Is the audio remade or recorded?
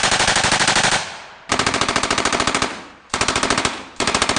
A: remade